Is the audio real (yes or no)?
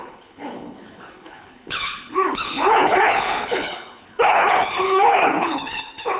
no